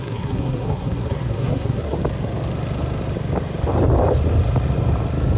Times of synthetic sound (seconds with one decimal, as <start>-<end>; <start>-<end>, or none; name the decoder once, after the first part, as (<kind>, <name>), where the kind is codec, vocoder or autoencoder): 0.0-2.0 (codec, SNAC)